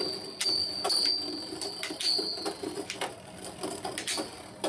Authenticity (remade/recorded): recorded